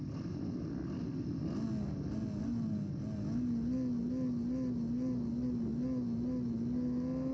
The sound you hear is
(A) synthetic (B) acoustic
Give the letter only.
B